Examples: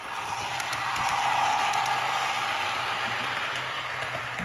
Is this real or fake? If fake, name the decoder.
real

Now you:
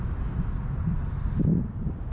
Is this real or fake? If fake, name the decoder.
real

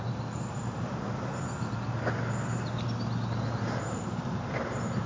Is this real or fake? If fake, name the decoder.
real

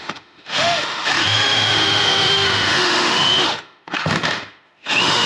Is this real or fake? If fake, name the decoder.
fake, autoencoder, DAC-VAE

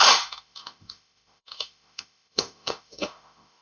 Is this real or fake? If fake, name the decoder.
fake, autoencoder, DAC-VAE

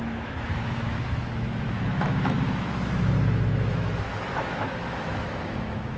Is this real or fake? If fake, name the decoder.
fake, autoencoder, DAC-VAE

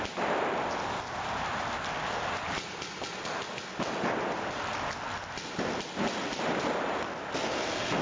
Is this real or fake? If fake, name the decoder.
real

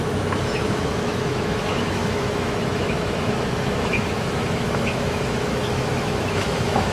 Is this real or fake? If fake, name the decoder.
fake, autoencoder, DAC-VAE